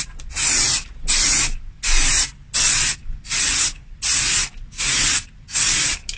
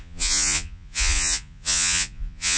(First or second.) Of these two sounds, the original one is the first